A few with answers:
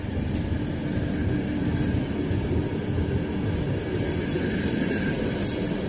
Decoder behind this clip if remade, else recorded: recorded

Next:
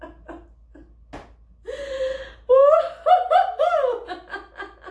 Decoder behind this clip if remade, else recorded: recorded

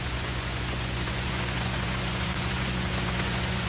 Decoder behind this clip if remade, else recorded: remade, vocoder, Vocos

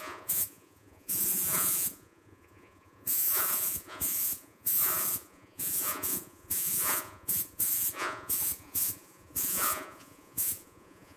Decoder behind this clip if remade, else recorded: remade, vocoder, Vocos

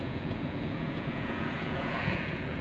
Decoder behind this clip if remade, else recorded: remade, vocoder, Vocos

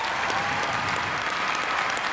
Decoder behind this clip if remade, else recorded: recorded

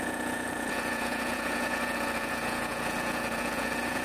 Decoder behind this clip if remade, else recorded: remade, vocoder, Vocos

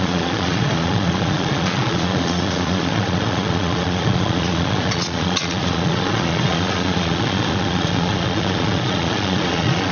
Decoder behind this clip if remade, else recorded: remade, vocoder, Vocos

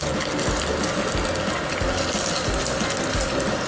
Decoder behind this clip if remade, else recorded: recorded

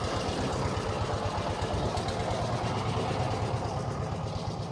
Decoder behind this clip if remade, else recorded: recorded